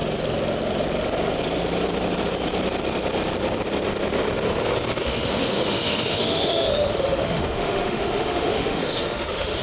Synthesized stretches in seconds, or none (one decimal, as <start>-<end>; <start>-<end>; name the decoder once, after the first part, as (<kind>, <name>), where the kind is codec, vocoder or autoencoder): 5.0-9.6 (autoencoder, DAC-VAE)